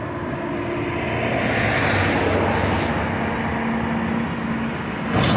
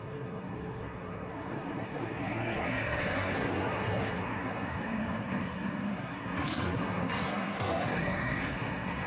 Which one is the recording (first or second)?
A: first